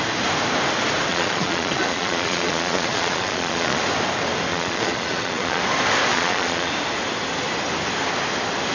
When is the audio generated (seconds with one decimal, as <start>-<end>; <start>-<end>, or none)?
1.1-3.8; 4.5-5.6; 6.1-6.7